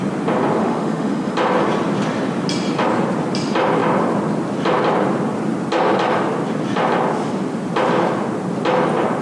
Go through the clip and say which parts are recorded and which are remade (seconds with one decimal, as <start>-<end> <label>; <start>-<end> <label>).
0.0-0.6 recorded; 0.6-1.3 remade; 1.3-9.2 recorded